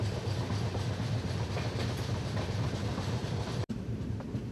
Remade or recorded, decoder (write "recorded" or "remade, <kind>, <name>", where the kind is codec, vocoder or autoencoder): remade, vocoder, BigVGAN v2